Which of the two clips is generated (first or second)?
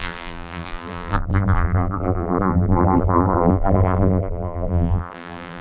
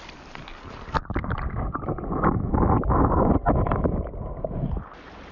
first